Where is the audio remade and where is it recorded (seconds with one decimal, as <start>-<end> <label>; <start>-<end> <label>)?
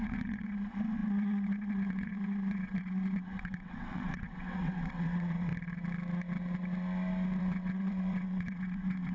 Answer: 0.0-5.5 remade; 5.5-7.4 recorded; 7.4-9.1 remade